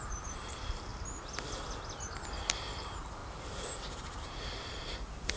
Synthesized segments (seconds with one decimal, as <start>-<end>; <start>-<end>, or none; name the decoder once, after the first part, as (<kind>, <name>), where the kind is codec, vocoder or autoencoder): 0.0-0.9 (vocoder, BigVGAN v2); 2.5-5.4